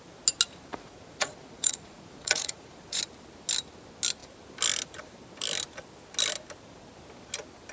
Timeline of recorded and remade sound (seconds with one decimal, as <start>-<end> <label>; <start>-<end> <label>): 0.0-0.7 recorded; 0.7-3.0 remade; 3.0-7.7 recorded